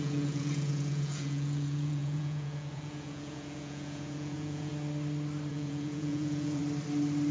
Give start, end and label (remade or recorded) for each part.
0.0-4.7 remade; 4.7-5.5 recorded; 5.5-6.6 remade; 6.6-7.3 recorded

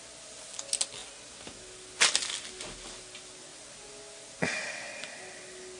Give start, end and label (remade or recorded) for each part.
0.0-5.8 recorded

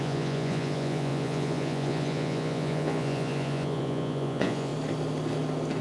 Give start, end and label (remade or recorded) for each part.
0.0-4.7 remade; 4.7-5.8 recorded